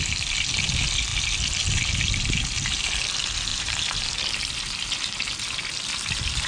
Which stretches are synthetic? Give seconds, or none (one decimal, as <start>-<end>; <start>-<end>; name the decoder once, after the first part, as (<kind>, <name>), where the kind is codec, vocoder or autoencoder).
3.5-4.1 (vocoder, BigVGAN v2)